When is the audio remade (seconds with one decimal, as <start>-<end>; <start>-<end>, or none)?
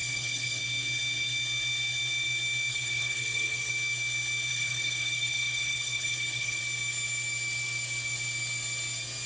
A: 0.0-0.6; 2.7-3.7; 4.5-6.6